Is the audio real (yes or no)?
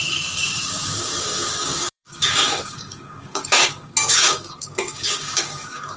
no